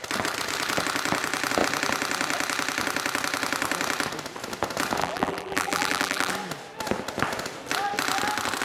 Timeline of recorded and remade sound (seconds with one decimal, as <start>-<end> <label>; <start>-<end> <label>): 0.0-5.0 recorded; 5.0-6.3 remade; 6.3-8.6 recorded

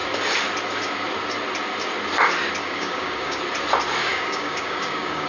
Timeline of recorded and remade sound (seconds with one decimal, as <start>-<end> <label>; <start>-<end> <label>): 0.0-2.6 recorded; 2.6-3.4 remade; 3.4-4.0 recorded; 4.0-5.3 remade